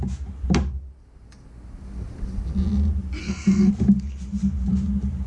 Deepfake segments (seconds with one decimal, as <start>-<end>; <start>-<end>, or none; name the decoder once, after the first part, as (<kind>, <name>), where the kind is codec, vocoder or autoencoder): 3.2-3.7 (codec, SNAC)